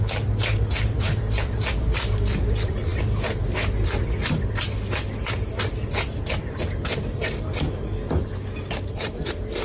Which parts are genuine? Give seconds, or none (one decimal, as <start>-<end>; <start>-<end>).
none